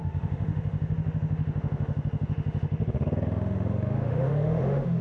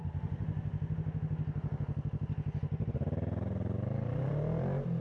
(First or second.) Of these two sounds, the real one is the second